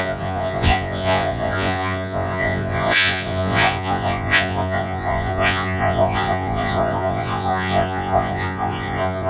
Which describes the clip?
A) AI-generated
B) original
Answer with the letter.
A